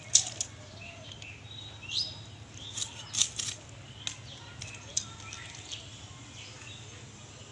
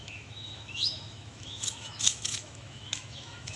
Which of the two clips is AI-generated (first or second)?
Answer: second